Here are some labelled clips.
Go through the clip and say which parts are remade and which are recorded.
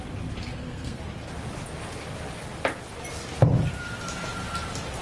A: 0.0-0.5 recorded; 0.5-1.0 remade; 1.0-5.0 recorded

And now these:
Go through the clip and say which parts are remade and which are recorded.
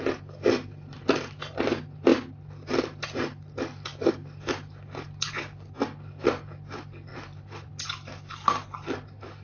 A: 0.0-7.1 recorded; 7.1-7.7 remade; 7.7-9.4 recorded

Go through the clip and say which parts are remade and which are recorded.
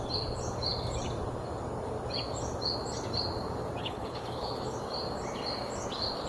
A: 0.0-3.8 recorded; 3.8-4.7 remade; 4.7-6.3 recorded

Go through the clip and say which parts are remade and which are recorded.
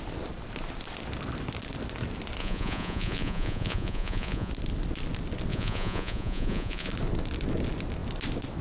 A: 0.0-2.4 recorded; 2.4-4.5 remade; 4.5-5.5 recorded; 5.5-6.9 remade; 6.9-8.6 recorded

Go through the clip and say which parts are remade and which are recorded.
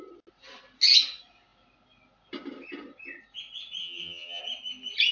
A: 0.0-3.8 recorded; 3.8-4.4 remade; 4.4-5.1 recorded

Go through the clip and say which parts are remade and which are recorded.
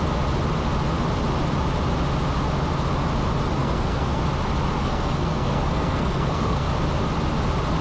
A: 0.0-3.6 recorded; 3.6-4.2 remade; 4.2-4.8 recorded; 4.8-6.7 remade; 6.7-7.8 recorded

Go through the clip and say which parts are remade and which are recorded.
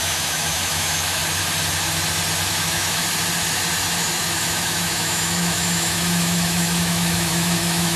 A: 0.0-1.2 remade; 1.2-2.5 recorded; 2.5-3.0 remade; 3.0-4.2 recorded; 4.2-8.0 remade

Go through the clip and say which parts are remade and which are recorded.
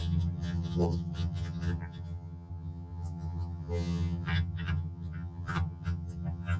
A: 0.0-6.6 remade